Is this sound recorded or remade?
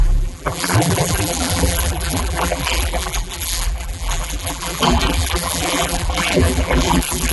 remade